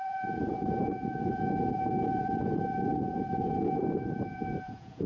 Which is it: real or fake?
fake